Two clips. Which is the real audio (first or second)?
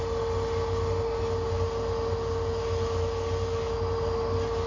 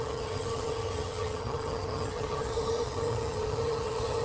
first